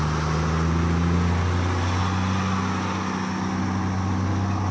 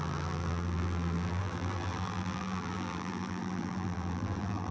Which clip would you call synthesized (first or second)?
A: second